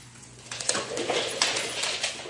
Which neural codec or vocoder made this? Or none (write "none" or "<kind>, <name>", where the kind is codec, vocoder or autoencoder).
vocoder, Vocos